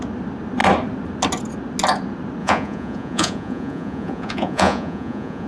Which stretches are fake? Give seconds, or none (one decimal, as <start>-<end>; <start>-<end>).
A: 2.4-5.5